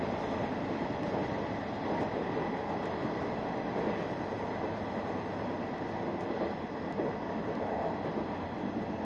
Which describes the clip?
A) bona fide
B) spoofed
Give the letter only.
A